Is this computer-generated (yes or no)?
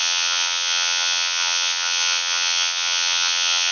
yes